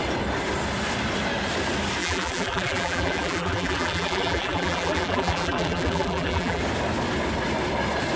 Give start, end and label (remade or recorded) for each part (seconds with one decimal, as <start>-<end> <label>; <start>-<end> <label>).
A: 0.0-2.0 recorded; 2.0-6.6 remade; 6.6-8.2 recorded